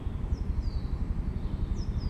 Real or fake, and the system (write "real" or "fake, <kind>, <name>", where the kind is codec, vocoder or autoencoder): real